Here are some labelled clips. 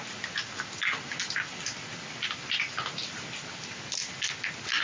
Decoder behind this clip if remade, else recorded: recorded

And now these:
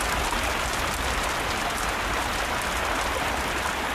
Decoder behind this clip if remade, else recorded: recorded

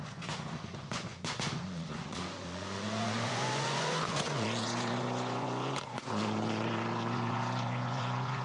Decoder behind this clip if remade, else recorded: remade, vocoder, Vocos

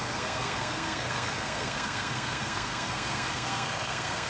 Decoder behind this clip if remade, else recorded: remade, codec, SNAC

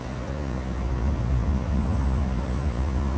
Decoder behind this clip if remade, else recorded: remade, vocoder, Vocos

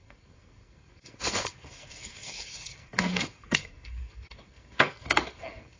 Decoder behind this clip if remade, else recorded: remade, codec, SNAC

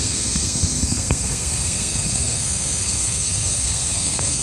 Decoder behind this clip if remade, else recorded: remade, codec, SNAC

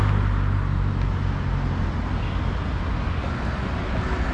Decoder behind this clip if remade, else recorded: recorded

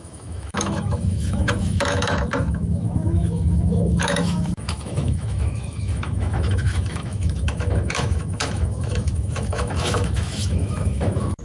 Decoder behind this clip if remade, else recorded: remade, autoencoder, DAC-VAE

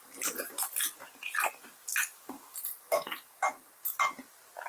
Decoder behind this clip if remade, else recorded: recorded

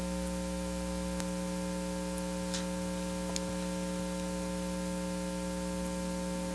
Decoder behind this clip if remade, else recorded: recorded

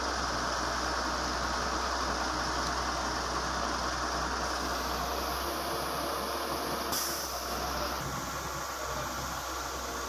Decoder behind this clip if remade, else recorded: recorded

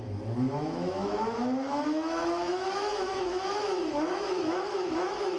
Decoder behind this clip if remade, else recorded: remade, autoencoder, DAC-VAE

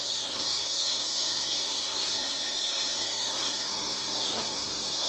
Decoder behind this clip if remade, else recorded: remade, codec, SNAC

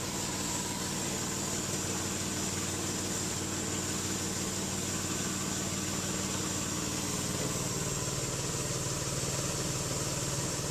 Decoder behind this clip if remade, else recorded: recorded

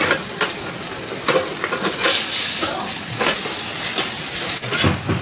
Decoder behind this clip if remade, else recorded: recorded